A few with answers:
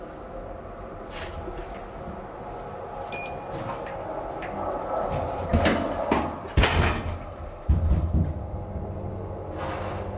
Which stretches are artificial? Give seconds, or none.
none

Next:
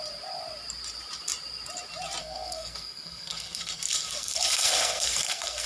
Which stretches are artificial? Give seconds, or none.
2.2-5.7 (codec, SNAC)

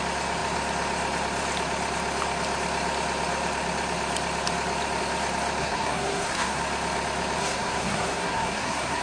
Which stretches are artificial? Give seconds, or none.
5.6-6.6 (codec, SNAC); 7.4-9.0

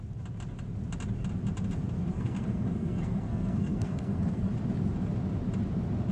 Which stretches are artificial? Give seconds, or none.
2.1-4.5 (codec, SNAC)

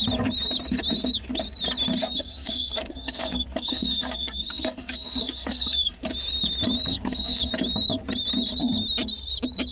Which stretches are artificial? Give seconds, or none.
2.0-6.0 (codec, SNAC); 6.9-7.5